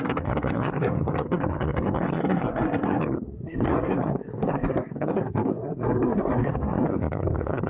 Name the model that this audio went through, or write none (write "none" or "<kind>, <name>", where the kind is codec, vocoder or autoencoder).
codec, SNAC